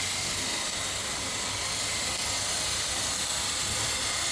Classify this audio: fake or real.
real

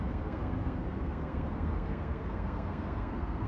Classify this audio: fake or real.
fake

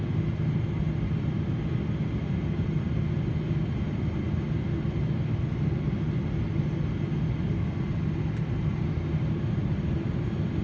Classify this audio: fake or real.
real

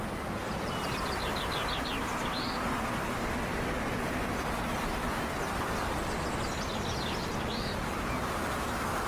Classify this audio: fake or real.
real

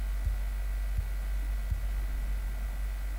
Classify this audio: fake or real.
real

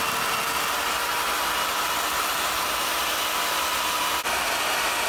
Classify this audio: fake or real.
real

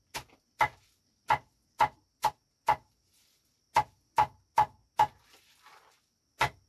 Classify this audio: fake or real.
real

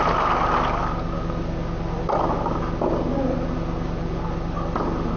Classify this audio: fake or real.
real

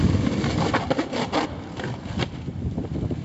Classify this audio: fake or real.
real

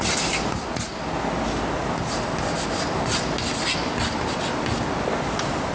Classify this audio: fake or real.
real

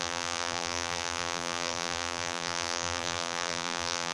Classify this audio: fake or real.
fake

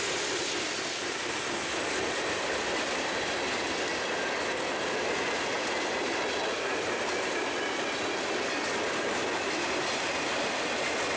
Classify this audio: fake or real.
real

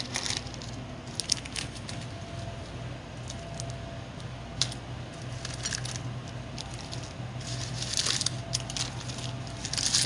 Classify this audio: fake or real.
real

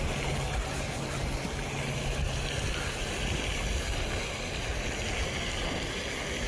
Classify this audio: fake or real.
real